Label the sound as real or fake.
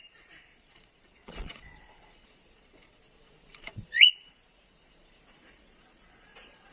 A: fake